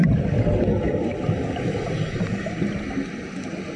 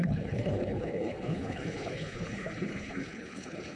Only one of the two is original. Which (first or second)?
first